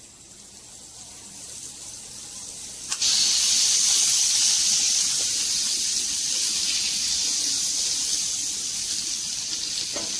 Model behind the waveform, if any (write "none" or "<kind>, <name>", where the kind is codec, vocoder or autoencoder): none